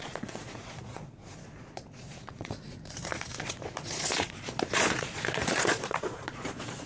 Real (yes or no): no